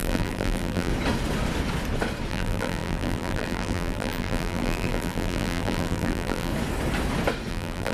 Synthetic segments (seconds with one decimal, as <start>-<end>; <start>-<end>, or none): 0.0-0.9; 2.3-6.5; 7.5-7.9